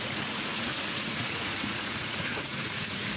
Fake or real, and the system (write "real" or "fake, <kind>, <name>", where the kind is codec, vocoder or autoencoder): fake, vocoder, Vocos